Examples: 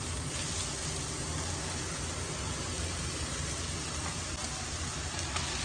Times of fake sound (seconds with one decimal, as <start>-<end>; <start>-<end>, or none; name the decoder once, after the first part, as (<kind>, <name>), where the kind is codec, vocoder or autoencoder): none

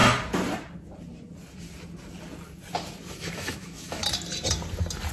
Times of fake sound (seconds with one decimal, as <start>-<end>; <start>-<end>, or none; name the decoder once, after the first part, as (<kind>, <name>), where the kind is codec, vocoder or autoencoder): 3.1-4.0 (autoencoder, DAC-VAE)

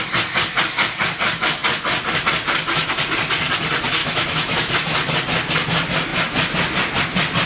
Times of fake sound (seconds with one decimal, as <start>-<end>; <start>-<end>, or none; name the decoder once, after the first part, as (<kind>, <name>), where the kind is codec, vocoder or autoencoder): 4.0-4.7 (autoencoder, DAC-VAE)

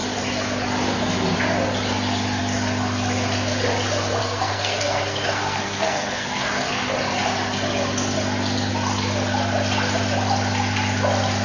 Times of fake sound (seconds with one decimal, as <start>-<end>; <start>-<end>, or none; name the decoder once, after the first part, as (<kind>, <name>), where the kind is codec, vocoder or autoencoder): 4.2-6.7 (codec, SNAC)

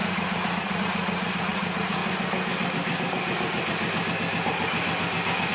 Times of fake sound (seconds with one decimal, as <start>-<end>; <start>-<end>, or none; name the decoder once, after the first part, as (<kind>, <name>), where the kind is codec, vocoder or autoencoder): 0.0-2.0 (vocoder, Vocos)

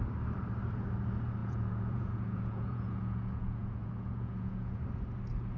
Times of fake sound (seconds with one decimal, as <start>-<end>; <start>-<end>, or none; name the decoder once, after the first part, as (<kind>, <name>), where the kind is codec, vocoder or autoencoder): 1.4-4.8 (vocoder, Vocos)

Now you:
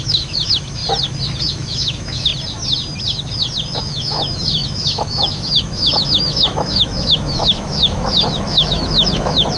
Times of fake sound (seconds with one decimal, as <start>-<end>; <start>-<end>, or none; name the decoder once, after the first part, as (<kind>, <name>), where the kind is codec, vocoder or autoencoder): 0.0-0.8 (autoencoder, DAC-VAE); 1.4-2.3; 3.8-9.6

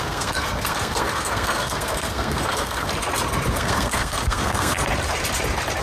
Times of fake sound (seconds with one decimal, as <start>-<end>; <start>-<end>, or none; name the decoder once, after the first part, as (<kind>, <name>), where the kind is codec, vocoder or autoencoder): 0.0-2.9 (codec, SNAC); 3.5-4.8